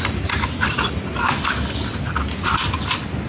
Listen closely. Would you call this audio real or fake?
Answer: real